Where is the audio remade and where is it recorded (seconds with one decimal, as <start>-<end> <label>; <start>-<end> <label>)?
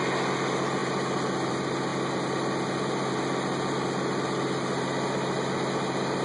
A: 0.0-6.2 recorded